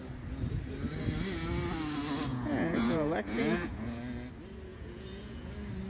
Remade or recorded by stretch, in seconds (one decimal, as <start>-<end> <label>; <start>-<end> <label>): 0.0-2.3 recorded; 2.3-4.0 remade; 4.0-4.7 recorded; 4.7-5.5 remade; 5.5-5.9 recorded